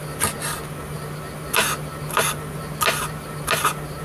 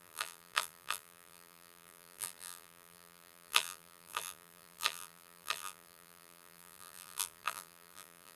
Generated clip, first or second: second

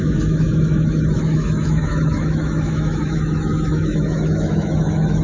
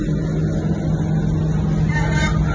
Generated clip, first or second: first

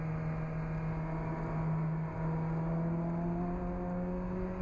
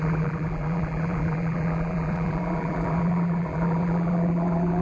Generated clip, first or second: second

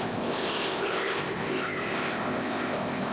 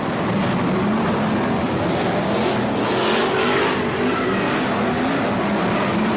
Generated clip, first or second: first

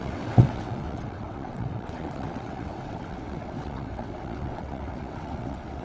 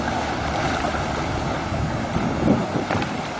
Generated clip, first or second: first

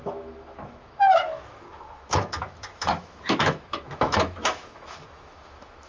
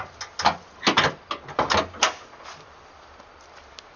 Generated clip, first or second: first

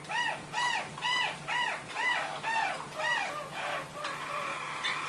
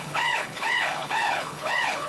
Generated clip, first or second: second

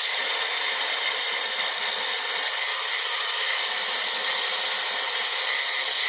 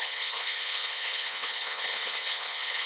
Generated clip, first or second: second